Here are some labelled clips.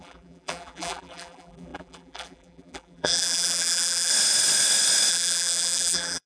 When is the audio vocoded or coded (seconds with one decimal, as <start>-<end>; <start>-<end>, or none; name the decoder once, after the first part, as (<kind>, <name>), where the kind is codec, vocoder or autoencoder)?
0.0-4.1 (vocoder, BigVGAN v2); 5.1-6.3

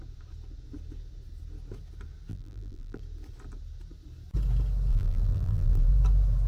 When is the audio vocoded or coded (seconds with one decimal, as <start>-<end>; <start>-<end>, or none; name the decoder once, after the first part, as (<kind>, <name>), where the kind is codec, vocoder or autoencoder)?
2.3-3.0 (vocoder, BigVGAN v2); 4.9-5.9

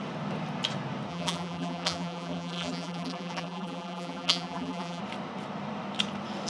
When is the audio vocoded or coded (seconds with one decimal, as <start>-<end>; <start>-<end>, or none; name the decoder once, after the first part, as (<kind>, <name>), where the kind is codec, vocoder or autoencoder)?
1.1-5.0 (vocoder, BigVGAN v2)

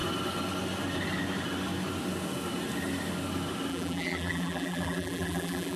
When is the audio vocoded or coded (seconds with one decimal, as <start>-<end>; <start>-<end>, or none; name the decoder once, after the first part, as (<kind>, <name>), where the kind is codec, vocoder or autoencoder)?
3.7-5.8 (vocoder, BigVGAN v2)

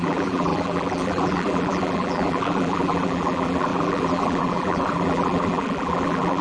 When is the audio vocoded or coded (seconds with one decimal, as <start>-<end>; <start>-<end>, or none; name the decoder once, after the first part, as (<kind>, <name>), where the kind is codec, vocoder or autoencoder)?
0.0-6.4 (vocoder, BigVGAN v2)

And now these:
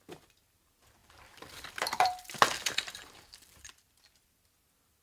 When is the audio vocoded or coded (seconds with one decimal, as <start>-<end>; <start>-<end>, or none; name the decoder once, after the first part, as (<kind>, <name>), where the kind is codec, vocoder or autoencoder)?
1.0-3.7 (vocoder, BigVGAN v2)

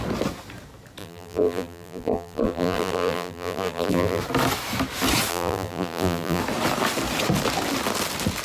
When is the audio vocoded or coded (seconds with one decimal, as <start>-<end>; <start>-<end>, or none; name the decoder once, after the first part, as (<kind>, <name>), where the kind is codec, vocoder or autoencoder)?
1.0-4.2 (vocoder, BigVGAN v2); 5.3-6.4

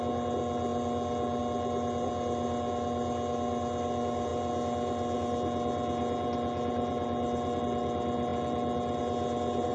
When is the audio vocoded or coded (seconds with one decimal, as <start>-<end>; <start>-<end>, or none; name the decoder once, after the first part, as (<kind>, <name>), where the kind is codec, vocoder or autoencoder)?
none